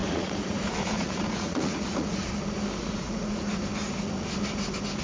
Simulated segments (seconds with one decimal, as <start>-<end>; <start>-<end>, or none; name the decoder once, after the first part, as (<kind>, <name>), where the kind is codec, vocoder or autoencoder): 0.0-2.3 (vocoder, Vocos); 2.8-3.5